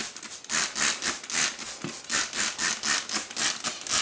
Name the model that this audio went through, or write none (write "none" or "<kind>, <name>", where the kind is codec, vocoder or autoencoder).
none